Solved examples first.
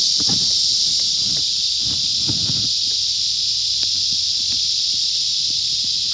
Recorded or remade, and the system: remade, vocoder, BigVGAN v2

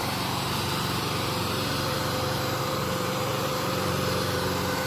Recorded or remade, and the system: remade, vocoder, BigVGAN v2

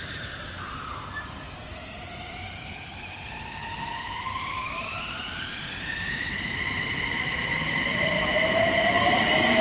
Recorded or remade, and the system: remade, vocoder, BigVGAN v2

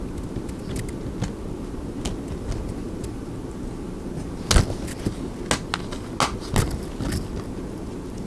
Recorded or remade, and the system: recorded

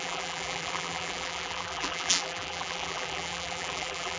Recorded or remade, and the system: remade, vocoder, BigVGAN v2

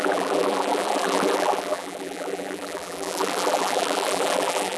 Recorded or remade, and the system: remade, vocoder, BigVGAN v2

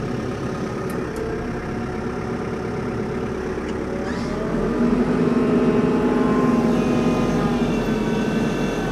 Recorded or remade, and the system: recorded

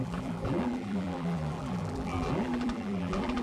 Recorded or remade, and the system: remade, vocoder, BigVGAN v2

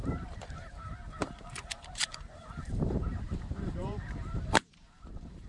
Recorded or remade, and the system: remade, vocoder, BigVGAN v2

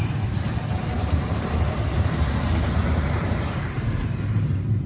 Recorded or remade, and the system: remade, vocoder, BigVGAN v2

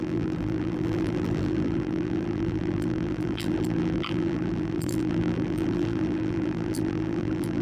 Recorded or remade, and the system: remade, vocoder, BigVGAN v2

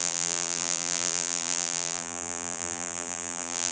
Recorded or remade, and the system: remade, vocoder, BigVGAN v2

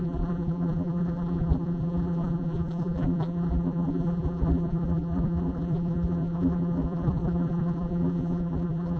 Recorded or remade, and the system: remade, vocoder, BigVGAN v2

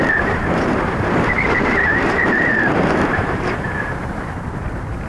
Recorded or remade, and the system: remade, vocoder, BigVGAN v2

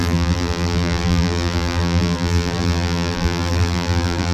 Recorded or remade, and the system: remade, vocoder, BigVGAN v2